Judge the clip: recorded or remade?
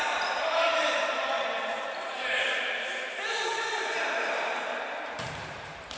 remade